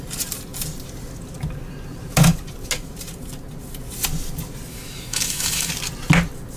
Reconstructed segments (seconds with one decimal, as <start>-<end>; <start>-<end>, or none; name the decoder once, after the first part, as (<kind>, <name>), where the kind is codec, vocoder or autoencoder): 4.7-5.7 (autoencoder, DAC-VAE)